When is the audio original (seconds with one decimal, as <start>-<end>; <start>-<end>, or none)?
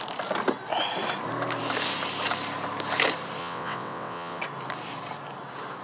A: 0.0-3.4; 4.4-5.8